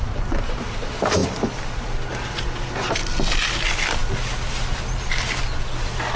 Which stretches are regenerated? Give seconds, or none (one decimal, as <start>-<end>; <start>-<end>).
none